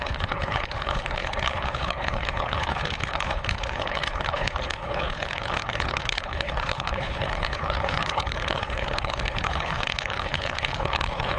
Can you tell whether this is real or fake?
fake